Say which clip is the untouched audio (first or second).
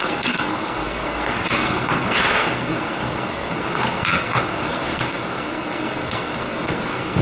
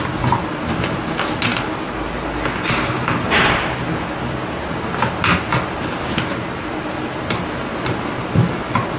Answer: second